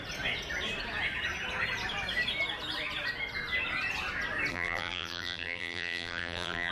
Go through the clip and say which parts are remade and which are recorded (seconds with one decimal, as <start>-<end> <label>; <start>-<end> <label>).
0.0-4.5 recorded; 4.5-6.7 remade